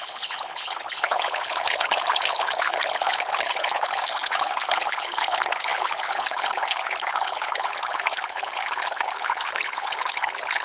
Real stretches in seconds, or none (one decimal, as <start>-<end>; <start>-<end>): none